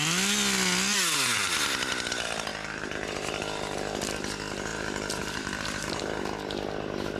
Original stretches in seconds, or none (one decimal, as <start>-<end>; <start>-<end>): 0.0-2.5; 3.3-4.7; 6.2-7.2